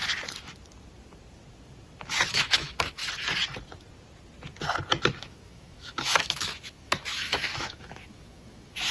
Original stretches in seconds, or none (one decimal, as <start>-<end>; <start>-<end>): 0.0-2.3; 3.0-5.2